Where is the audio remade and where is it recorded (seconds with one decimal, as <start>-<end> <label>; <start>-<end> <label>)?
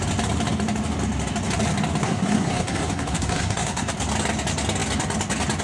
0.0-2.0 recorded; 2.0-3.9 remade; 3.9-5.6 recorded